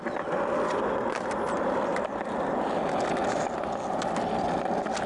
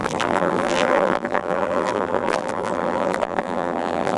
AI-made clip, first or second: second